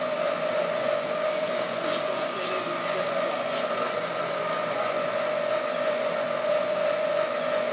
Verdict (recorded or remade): remade